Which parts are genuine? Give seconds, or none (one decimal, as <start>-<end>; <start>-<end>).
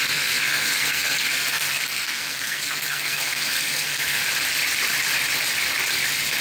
4.2-6.4